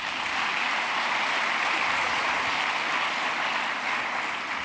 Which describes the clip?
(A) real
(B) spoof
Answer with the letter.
A